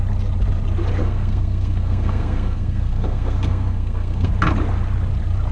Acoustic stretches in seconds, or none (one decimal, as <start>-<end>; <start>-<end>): 0.0-1.0; 4.3-5.5